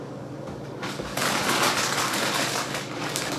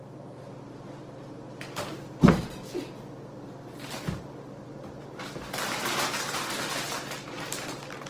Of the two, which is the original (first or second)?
second